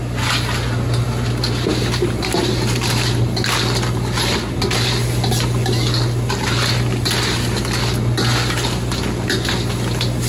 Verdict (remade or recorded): recorded